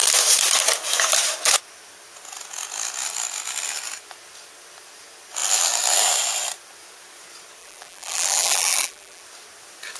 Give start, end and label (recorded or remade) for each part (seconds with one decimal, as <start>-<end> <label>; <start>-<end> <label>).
0.0-7.6 recorded; 7.6-9.2 remade; 9.2-10.0 recorded